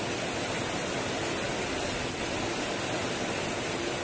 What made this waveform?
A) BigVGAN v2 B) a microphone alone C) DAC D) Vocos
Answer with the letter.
B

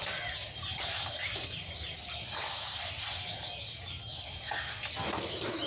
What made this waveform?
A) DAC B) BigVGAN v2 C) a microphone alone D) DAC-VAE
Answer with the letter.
C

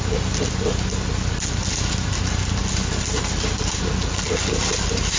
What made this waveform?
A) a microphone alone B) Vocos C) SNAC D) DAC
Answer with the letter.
A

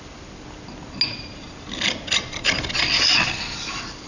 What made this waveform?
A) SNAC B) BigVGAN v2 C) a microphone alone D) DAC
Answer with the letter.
C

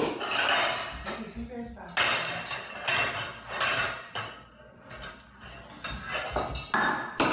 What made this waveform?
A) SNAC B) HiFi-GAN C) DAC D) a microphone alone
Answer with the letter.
D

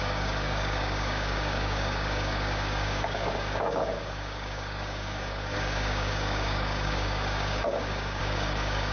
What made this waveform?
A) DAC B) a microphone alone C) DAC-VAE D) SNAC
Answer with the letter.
A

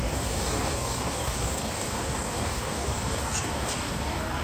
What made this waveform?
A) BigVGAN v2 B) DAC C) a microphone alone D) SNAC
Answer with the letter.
B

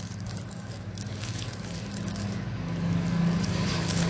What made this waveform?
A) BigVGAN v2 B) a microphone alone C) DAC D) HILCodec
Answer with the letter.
C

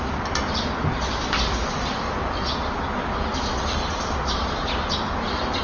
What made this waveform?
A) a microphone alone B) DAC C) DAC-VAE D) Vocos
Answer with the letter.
A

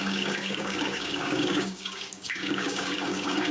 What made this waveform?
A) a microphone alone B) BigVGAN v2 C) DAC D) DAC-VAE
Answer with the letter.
C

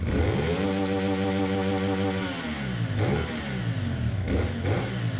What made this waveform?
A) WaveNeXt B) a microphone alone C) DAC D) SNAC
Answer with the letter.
B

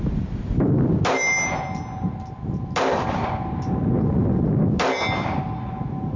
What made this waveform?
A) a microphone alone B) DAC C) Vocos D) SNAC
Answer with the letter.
A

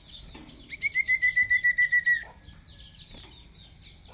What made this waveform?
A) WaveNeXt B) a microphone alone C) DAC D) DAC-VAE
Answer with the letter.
B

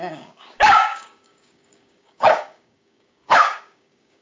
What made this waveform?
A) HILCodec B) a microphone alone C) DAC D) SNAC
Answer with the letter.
C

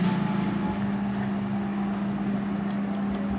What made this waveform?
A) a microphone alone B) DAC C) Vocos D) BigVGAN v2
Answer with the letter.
A